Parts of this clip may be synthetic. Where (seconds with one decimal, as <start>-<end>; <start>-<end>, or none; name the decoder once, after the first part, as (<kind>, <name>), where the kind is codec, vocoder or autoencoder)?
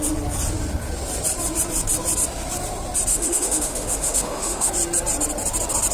3.1-4.7 (autoencoder, DAC-VAE)